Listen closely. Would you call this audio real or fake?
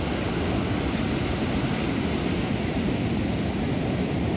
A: real